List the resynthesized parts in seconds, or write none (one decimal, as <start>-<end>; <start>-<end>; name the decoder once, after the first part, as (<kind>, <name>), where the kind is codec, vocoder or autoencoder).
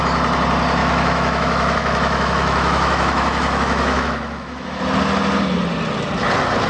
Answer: 0.8-4.8 (autoencoder, DAC-VAE)